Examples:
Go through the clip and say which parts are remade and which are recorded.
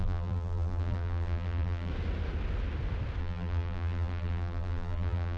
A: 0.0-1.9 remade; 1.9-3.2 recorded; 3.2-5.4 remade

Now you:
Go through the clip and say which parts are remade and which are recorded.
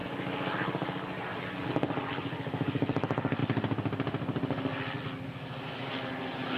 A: 0.0-6.6 recorded